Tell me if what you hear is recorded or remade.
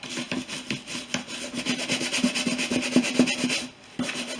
recorded